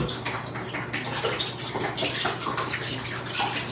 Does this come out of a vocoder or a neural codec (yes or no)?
no